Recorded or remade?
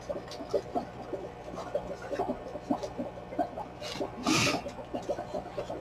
recorded